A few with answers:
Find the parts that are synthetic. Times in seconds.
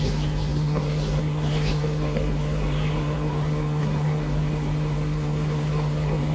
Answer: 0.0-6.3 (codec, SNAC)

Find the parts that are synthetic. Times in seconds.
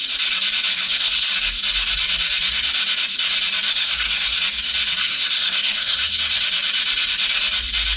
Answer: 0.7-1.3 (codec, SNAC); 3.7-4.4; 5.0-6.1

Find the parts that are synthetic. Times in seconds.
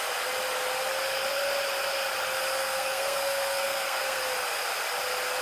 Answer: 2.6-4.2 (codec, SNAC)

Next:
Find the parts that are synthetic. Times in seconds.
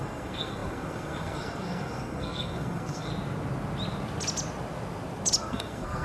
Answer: 0.0-3.1 (codec, SNAC); 5.4-6.0